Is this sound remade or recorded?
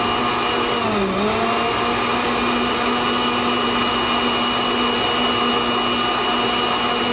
recorded